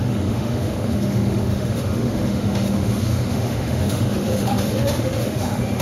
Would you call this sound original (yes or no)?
no